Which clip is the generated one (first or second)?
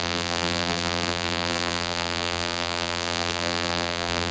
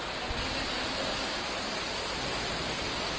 first